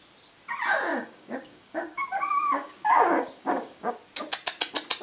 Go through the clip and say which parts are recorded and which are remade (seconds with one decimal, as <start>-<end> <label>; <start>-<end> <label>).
0.0-0.9 recorded; 0.9-3.9 remade; 3.9-5.0 recorded